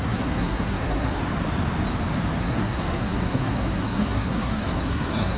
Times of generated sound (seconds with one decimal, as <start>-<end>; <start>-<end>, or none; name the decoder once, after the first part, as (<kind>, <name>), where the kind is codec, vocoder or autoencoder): 0.0-1.2 (codec, SNAC); 2.4-5.4